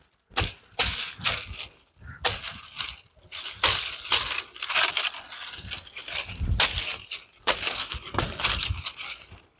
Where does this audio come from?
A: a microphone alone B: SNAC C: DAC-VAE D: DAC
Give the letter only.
A